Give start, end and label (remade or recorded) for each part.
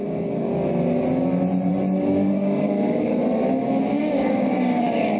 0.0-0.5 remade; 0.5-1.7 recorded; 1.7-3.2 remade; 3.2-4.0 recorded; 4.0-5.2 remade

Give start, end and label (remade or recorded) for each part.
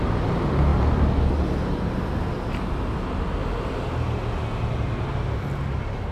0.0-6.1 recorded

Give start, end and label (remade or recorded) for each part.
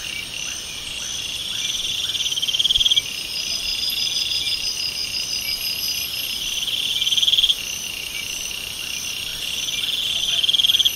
0.0-1.4 recorded; 1.4-3.0 remade; 3.0-11.0 recorded